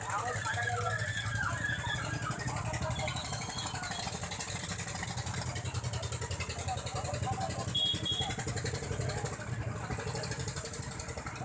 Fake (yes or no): no